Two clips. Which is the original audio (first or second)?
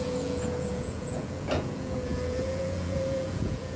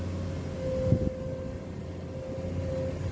second